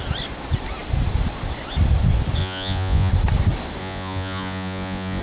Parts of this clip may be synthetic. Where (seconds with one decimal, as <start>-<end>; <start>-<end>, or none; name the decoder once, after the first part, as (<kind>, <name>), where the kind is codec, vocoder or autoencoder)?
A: 2.4-3.1 (vocoder, Vocos); 3.8-5.2

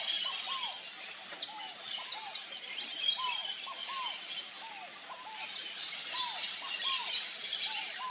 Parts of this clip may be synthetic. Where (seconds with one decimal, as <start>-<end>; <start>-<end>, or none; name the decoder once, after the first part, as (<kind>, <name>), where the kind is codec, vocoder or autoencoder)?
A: none